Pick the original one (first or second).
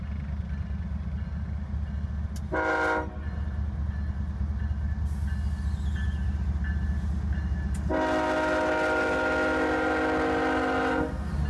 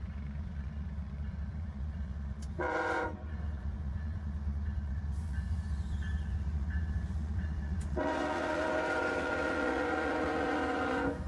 first